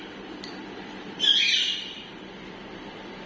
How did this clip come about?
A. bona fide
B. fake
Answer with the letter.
B